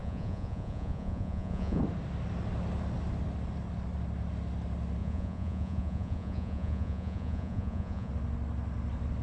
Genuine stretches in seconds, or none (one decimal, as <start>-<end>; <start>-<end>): 1.8-5.0; 8.1-9.2